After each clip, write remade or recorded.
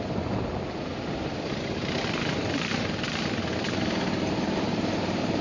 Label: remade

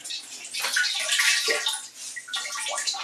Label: recorded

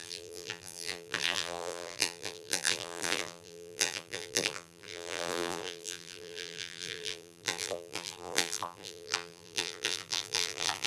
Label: remade